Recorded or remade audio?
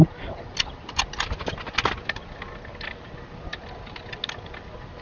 recorded